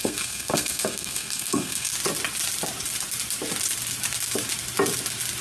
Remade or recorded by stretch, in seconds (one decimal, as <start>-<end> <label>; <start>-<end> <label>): 0.0-1.9 remade; 1.9-5.4 recorded